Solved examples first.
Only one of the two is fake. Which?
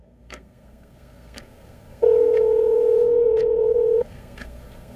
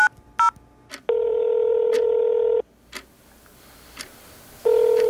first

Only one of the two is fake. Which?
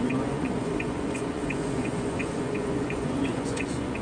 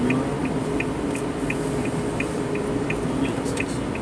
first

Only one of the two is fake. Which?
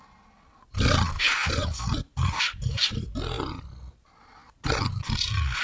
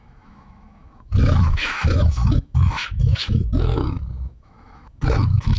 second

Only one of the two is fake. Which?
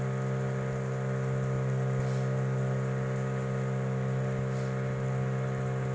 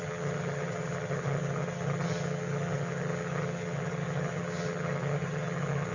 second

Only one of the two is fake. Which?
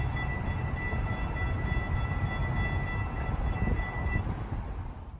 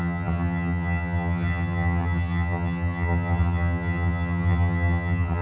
second